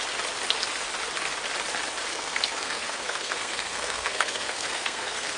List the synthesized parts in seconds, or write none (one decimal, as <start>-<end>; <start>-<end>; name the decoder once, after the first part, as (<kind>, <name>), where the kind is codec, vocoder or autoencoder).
2.1-5.4 (codec, SNAC)